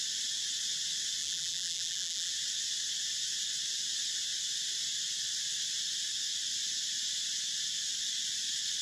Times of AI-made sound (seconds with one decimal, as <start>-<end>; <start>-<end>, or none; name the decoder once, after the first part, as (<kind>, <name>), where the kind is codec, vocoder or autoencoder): 1.2-2.3 (vocoder, BigVGAN v2)